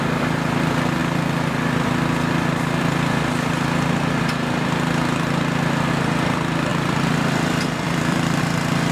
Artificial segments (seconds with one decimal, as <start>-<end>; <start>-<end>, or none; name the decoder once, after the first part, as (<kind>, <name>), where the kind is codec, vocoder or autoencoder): 6.7-8.4 (vocoder, BigVGAN v2)

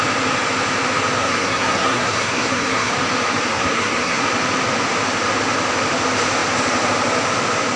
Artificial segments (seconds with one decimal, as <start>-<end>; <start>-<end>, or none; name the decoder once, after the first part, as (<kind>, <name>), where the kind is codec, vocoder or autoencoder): 1.2-2.9 (codec, SNAC); 3.5-4.2

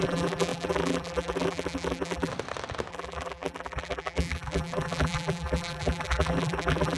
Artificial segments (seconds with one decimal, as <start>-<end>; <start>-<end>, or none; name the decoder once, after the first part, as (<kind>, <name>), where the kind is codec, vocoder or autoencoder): 0.0-2.3 (vocoder, BigVGAN v2); 2.9-7.0

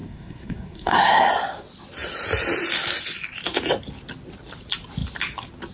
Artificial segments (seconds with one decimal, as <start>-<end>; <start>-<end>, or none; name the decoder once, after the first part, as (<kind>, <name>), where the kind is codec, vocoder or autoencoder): 0.0-1.3 (codec, SNAC)

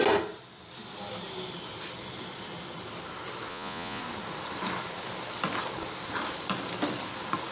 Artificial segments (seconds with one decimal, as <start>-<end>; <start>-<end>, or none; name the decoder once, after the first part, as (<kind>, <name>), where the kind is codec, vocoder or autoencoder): 3.5-4.0 (vocoder, Vocos)

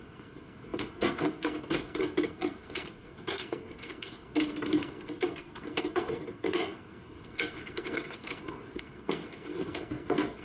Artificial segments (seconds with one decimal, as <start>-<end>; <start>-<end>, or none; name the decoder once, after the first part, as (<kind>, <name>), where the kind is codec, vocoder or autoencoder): 0.0-10.4 (codec, SNAC)

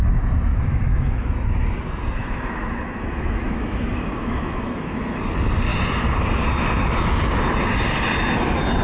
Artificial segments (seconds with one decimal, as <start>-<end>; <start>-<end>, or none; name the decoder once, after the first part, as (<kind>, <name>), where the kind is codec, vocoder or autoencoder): 0.5-1.3 (autoencoder, DAC-VAE); 2.2-5.2

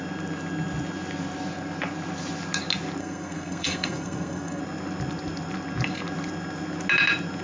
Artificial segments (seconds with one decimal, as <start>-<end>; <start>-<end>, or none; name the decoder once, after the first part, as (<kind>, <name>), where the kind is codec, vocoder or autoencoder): 3.0-4.6 (codec, SNAC)